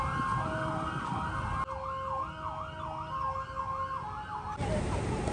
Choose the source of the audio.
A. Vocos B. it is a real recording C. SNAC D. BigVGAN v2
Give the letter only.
B